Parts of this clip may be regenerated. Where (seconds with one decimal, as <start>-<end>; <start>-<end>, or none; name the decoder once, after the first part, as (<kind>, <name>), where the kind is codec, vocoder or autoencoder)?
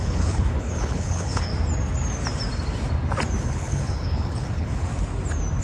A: 0.0-1.5 (codec, HILCodec); 3.4-4.9